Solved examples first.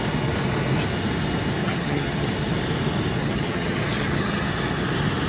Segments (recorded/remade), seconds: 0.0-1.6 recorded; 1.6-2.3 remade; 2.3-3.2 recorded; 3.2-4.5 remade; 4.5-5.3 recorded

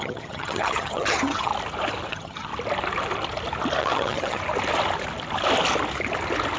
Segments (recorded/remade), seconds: 0.0-1.5 remade; 1.5-2.1 recorded; 2.1-2.5 remade; 2.5-3.8 recorded; 3.8-4.4 remade; 4.4-6.6 recorded